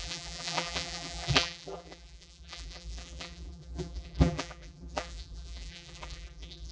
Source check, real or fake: fake